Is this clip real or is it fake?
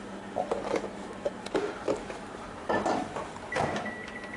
fake